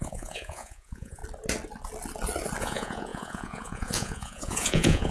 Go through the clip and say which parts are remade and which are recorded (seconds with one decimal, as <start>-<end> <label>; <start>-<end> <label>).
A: 0.0-1.2 remade; 1.2-2.6 recorded; 2.6-5.1 remade